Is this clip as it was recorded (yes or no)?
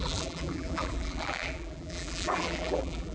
no